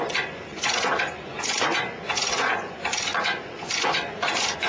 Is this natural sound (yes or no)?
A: no